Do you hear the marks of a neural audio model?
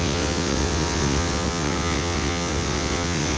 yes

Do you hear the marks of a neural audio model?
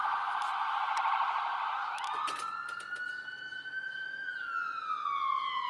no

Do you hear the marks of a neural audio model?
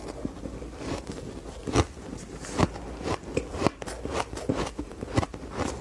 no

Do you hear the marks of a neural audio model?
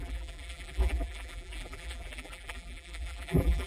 yes